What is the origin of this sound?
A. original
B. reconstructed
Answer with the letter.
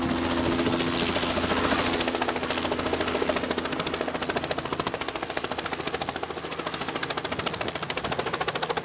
A